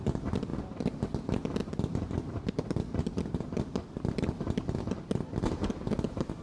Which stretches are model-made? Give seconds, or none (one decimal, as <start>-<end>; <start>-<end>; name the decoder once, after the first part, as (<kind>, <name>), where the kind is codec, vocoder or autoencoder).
none